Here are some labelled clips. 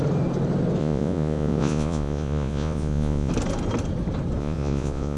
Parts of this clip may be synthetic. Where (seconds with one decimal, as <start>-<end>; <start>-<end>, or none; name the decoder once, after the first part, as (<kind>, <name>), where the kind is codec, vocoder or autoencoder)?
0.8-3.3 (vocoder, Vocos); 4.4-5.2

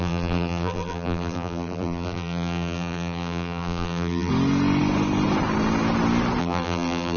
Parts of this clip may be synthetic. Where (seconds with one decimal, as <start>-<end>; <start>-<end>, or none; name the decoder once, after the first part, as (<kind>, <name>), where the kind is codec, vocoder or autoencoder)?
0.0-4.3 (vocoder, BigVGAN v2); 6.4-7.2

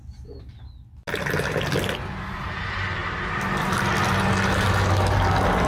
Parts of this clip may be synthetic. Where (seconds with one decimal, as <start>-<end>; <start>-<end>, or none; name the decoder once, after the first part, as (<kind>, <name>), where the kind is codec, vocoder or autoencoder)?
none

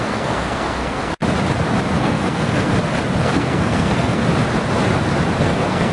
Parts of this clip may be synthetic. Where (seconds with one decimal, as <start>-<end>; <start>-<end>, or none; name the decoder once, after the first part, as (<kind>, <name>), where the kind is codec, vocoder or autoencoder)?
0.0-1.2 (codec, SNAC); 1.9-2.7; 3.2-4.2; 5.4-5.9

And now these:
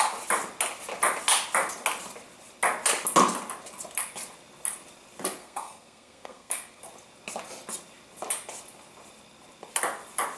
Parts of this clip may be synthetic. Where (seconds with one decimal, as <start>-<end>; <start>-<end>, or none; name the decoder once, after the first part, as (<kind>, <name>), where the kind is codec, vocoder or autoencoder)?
5.4-6.8 (codec, SNAC)